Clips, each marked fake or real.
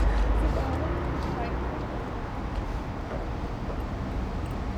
real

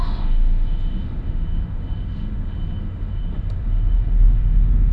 fake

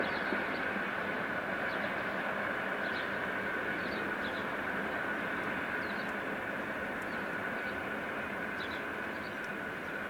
real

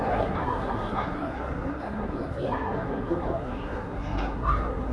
fake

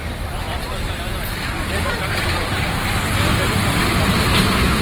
real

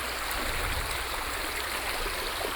real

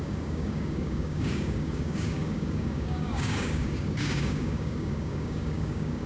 fake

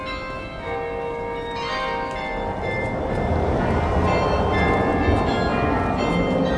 real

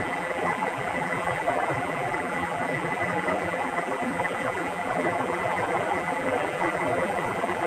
fake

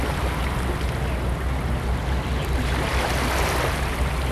real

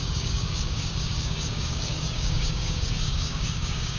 fake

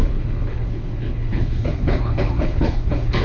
fake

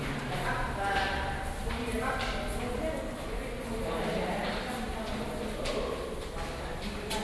real